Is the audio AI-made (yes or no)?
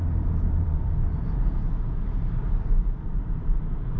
yes